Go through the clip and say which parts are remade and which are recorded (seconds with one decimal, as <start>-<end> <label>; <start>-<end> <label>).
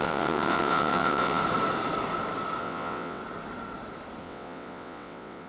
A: 0.0-1.4 remade; 1.4-2.6 recorded; 2.6-3.2 remade; 3.2-4.2 recorded; 4.2-5.5 remade